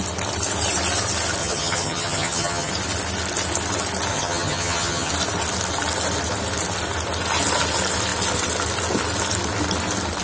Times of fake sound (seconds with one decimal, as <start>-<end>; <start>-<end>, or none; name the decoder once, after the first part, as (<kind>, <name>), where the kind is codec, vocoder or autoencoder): 1.4-2.7 (vocoder, HiFi-GAN); 4.1-5.1